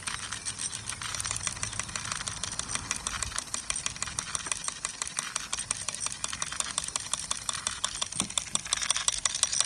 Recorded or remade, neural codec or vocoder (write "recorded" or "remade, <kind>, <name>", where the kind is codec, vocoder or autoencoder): recorded